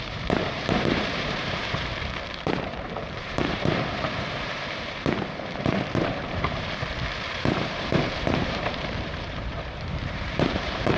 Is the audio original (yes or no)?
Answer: no